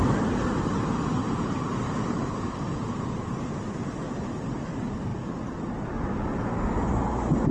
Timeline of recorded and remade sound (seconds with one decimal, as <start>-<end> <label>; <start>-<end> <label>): 0.0-7.5 recorded